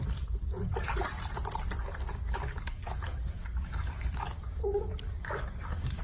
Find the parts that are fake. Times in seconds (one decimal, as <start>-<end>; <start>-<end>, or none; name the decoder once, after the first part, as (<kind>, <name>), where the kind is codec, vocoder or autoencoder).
2.1-6.0 (codec, DAC)